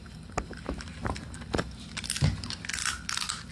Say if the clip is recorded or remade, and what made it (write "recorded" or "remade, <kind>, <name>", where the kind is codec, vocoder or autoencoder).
recorded